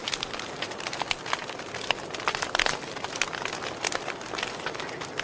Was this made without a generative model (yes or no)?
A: yes